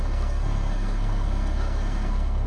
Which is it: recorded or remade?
remade